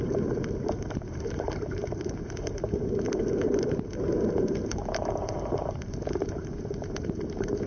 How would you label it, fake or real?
fake